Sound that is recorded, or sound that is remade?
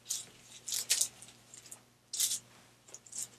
recorded